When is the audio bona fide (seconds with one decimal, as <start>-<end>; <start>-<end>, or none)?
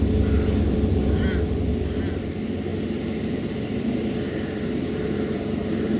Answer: 0.0-2.7